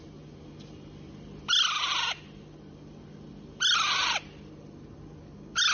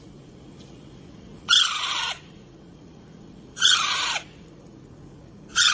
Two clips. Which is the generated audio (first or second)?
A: second